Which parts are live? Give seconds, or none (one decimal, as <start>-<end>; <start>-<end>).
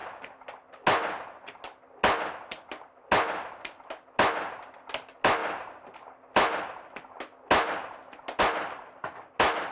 0.0-9.7